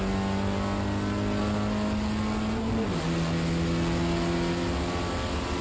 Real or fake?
real